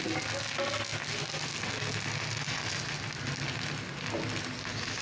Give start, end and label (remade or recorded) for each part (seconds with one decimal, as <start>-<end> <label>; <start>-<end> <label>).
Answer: 0.0-5.0 recorded